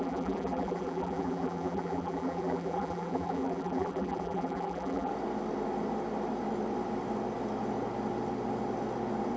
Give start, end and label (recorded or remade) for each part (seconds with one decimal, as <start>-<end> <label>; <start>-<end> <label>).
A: 0.0-5.1 remade; 5.1-9.4 recorded